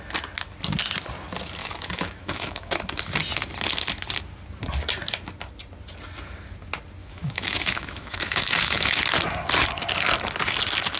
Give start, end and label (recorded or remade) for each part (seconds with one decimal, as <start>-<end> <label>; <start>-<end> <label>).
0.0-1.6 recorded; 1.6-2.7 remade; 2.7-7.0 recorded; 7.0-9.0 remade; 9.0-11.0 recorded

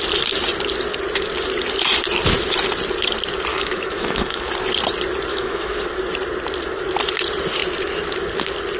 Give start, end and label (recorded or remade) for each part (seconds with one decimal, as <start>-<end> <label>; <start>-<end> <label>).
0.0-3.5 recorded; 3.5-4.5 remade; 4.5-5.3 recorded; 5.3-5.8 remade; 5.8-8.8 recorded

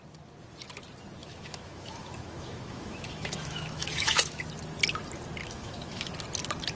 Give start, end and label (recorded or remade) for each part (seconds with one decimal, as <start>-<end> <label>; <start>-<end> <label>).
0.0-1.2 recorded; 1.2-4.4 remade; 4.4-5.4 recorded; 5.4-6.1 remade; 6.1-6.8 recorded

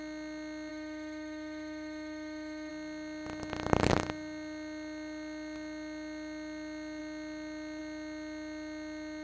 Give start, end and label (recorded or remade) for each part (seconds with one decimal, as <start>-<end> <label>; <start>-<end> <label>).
0.0-0.7 recorded; 0.7-2.7 remade; 2.7-9.2 recorded

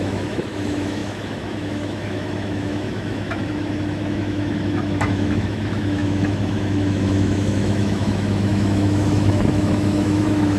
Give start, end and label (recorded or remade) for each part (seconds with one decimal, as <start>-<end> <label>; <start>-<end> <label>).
0.0-10.6 remade

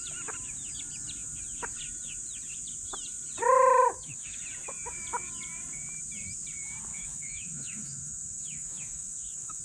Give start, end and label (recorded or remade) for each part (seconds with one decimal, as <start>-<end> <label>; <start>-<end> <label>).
0.0-3.8 recorded; 3.8-4.4 remade; 4.4-6.9 recorded; 6.9-9.6 remade